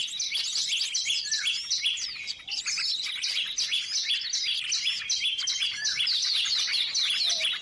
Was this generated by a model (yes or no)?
no